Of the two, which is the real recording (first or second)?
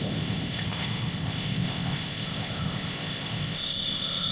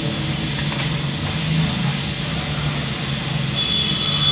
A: second